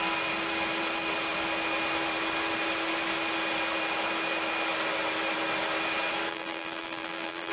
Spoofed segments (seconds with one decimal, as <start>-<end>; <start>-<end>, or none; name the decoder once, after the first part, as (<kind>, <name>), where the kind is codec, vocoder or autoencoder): 6.3-7.5 (vocoder, BigVGAN v2)